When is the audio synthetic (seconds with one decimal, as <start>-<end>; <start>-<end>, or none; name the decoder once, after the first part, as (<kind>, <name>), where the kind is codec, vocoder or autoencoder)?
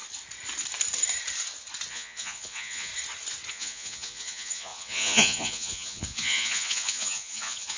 1.9-2.9 (vocoder, Vocos); 3.5-7.8